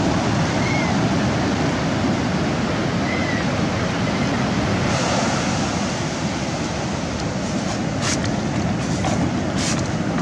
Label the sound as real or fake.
real